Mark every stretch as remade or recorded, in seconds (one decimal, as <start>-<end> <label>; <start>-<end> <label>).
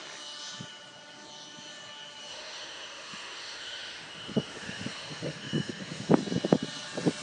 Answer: 0.0-2.3 recorded; 2.3-6.1 remade; 6.1-7.2 recorded